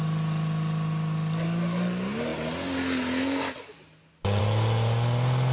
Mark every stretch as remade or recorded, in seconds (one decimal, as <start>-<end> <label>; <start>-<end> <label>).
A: 0.0-5.5 recorded